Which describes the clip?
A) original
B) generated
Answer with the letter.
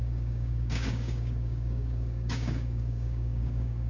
B